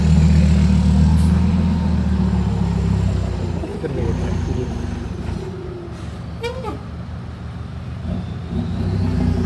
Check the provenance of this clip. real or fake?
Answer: real